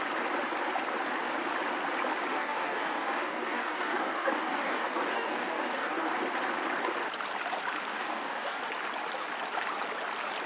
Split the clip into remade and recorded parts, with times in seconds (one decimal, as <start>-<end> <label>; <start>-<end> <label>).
0.0-2.3 recorded; 2.3-6.1 remade; 6.1-7.9 recorded; 7.9-8.6 remade; 8.6-10.5 recorded